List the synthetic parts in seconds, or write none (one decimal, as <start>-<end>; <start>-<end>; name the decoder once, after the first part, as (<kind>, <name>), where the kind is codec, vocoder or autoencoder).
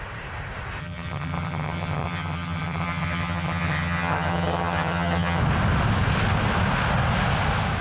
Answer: 0.8-5.4 (vocoder, HiFi-GAN)